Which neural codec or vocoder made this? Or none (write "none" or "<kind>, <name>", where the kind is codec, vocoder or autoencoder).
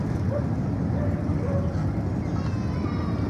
none